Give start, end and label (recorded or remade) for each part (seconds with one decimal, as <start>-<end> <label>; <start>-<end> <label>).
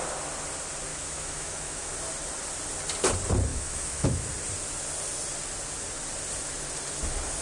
0.0-0.9 recorded; 0.9-1.9 remade; 1.9-3.5 recorded; 3.5-4.3 remade; 4.3-7.4 recorded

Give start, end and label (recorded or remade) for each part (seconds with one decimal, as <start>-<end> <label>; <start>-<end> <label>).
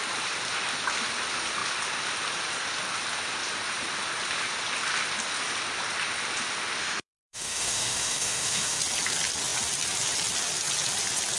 0.0-6.8 recorded; 6.8-8.8 remade; 8.8-11.4 recorded